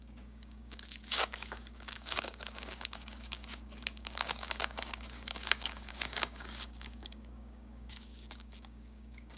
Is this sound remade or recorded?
remade